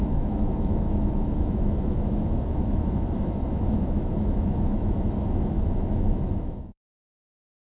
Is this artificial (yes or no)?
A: yes